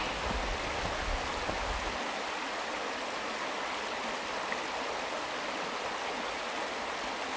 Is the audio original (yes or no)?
yes